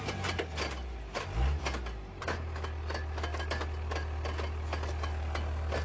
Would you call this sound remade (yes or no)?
no